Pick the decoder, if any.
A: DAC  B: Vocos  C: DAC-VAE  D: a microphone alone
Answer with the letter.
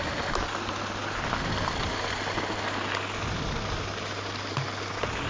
D